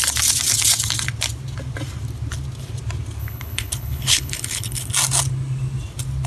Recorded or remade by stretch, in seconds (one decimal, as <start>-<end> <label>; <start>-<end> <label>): 0.0-3.2 recorded; 3.2-4.9 remade; 4.9-6.3 recorded